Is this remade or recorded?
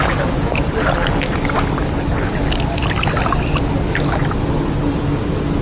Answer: recorded